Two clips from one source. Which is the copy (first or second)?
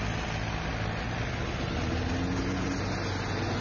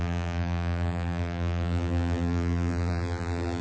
second